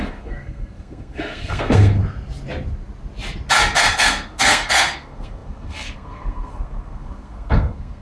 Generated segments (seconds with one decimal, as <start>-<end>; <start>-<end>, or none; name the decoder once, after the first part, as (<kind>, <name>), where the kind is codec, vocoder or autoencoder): 0.0-2.0 (codec, SNAC); 3.8-8.0